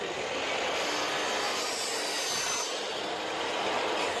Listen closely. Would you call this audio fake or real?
real